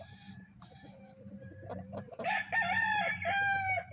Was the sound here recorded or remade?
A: remade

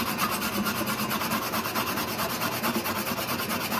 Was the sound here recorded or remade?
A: recorded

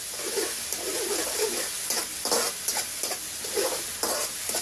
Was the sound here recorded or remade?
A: recorded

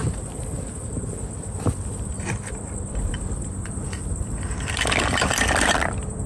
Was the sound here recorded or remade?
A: remade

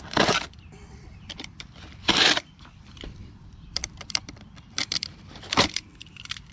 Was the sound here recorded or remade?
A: remade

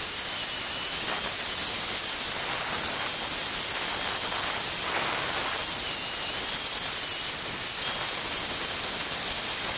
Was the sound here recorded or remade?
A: recorded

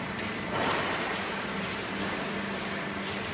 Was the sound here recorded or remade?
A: remade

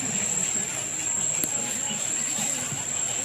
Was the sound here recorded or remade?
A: recorded